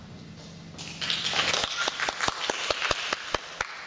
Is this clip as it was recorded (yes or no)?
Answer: yes